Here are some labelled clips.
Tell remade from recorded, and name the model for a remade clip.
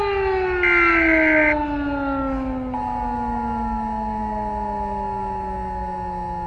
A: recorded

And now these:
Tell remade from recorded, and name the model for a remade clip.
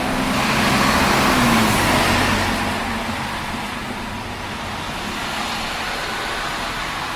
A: recorded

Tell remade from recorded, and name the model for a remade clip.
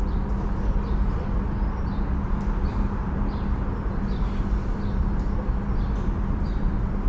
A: recorded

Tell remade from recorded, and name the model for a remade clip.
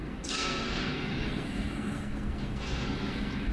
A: remade, codec, SNAC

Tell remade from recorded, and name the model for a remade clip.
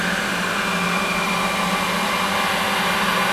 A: recorded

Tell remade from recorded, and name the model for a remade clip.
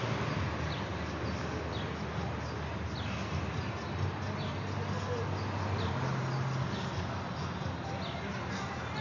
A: recorded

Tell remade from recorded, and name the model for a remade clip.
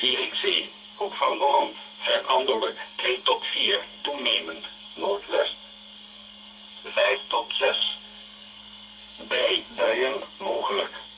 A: remade, codec, SNAC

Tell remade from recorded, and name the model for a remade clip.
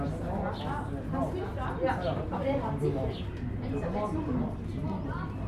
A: recorded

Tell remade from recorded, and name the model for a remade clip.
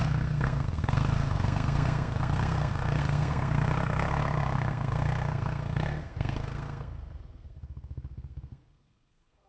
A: remade, codec, SNAC